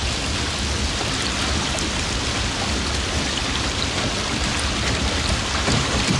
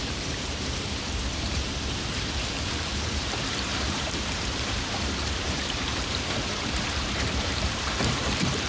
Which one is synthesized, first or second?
second